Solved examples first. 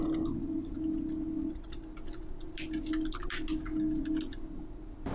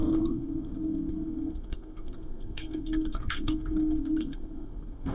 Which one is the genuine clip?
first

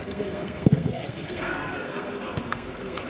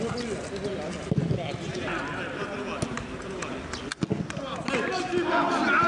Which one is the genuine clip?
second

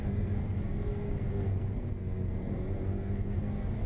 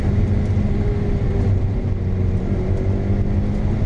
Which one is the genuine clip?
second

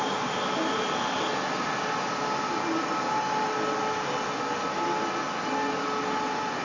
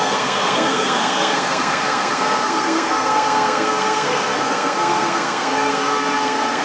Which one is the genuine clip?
first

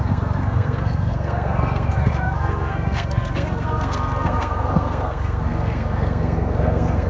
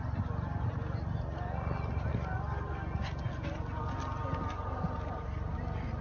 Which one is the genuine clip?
second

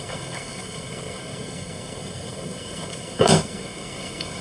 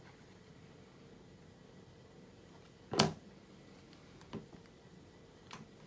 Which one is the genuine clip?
second